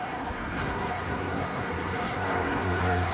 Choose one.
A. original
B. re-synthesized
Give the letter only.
B